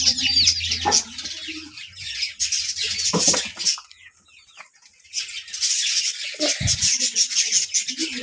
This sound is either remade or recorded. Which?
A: recorded